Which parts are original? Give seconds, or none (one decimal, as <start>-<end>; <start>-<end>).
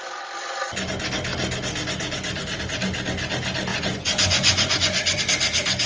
0.0-3.7; 5.2-5.9